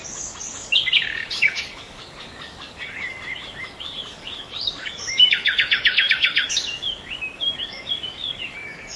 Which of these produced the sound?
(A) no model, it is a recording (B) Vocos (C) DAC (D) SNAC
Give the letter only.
C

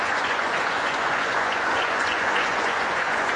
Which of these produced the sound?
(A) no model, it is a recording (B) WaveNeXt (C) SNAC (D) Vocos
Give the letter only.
D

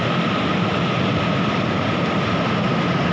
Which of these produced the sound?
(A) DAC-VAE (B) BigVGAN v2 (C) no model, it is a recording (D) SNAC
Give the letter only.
C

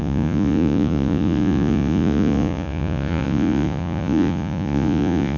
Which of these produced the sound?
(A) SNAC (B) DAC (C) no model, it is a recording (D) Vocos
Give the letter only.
D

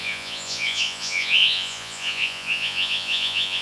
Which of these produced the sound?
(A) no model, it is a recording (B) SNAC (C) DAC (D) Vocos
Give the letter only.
D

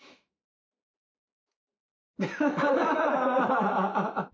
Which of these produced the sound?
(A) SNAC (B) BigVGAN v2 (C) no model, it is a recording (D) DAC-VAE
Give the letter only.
D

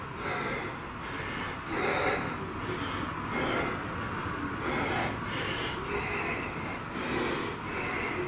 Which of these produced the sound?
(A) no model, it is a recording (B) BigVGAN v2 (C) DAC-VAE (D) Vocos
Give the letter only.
A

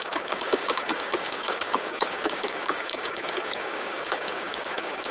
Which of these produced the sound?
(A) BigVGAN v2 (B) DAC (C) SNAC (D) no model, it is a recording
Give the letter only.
B